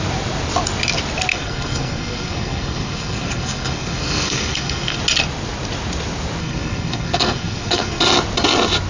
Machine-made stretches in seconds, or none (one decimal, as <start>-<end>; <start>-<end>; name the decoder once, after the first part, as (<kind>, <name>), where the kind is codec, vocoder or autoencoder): 1.3-5.0 (codec, SNAC); 6.4-8.0

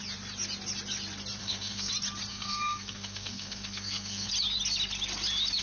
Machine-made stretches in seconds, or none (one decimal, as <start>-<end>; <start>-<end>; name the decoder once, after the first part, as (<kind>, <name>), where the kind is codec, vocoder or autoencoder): 1.4-1.9 (codec, SNAC); 2.3-4.3

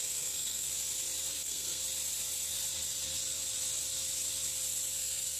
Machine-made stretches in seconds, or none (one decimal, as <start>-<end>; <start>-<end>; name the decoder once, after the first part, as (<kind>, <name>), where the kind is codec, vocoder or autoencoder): 0.0-0.7 (codec, SNAC); 1.3-1.8; 5.0-5.4